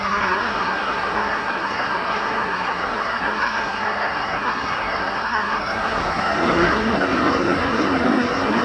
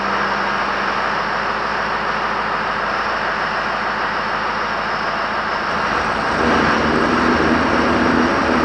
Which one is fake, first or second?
first